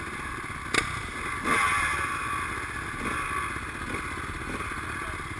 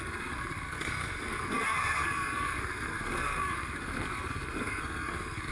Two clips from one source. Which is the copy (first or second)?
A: second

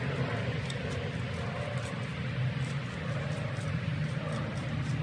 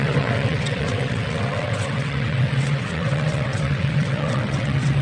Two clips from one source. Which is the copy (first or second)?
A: second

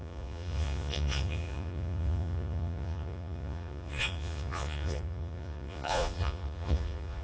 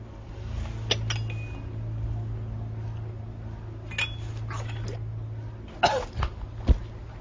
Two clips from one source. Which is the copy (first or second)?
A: first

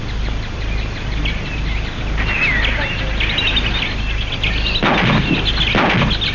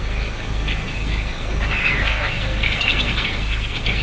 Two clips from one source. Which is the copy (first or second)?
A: second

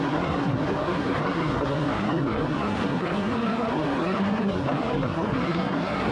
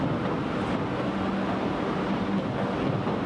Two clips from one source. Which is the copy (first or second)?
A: first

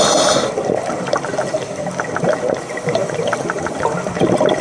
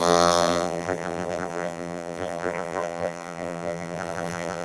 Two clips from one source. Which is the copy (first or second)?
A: second